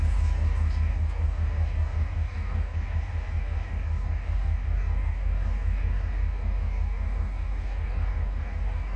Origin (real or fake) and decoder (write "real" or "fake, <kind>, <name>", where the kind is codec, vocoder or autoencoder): fake, codec, DAC